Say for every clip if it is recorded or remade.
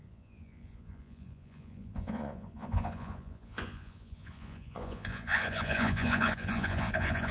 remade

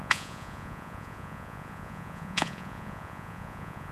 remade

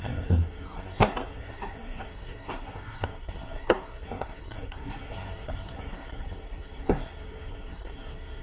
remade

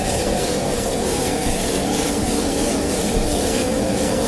remade